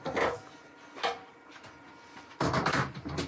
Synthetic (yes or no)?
no